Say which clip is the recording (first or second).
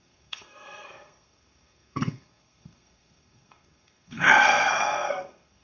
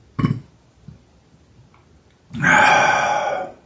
second